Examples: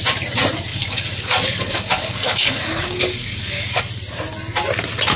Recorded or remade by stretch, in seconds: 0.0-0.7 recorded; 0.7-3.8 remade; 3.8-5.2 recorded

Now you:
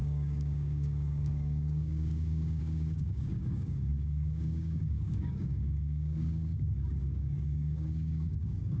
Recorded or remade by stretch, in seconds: 0.0-8.8 remade

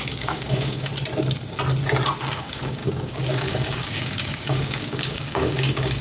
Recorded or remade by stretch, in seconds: 0.0-0.9 remade; 0.9-2.2 recorded; 2.2-6.0 remade

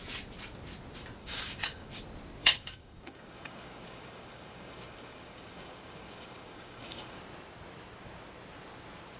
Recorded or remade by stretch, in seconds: 0.0-1.2 recorded; 1.2-2.0 remade; 2.0-2.4 recorded; 2.4-7.2 remade; 7.2-9.2 recorded